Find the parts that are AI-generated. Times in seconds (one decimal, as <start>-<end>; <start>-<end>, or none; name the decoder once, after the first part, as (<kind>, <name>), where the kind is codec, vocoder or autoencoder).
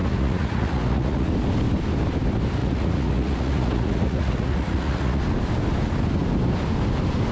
0.0-1.3 (vocoder, Vocos); 2.6-5.2